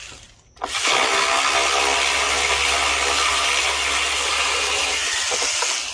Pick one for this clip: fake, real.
real